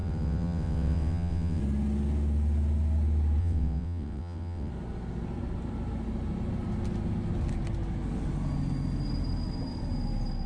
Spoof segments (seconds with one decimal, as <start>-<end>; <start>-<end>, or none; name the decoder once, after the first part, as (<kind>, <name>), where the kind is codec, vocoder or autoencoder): 0.0-1.6 (vocoder, WaveNeXt); 3.4-4.7

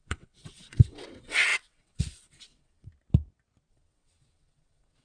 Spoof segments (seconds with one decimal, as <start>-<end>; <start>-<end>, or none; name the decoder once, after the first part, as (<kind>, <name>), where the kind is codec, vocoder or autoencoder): 0.0-2.9 (vocoder, WaveNeXt); 3.7-5.0